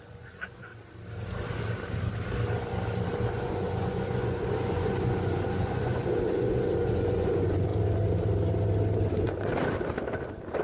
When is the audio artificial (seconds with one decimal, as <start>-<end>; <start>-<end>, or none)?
0.0-0.7; 3.4-7.7; 9.1-9.5